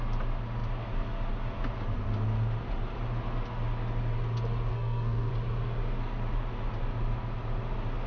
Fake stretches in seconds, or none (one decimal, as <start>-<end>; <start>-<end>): 4.7-5.3